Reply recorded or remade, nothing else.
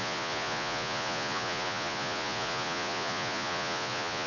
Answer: remade